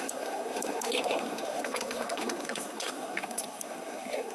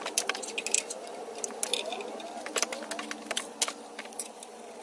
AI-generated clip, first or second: first